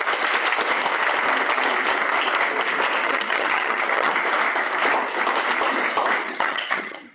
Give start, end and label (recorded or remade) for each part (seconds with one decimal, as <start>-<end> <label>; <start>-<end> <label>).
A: 0.0-3.0 recorded; 3.0-4.1 remade; 4.1-6.2 recorded; 6.2-7.1 remade